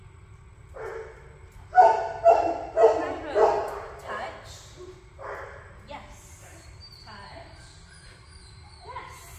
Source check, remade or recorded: recorded